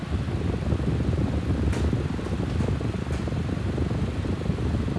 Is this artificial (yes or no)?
no